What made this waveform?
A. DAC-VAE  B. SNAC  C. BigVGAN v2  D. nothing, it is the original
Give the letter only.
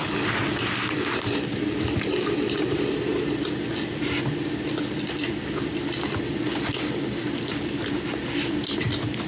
D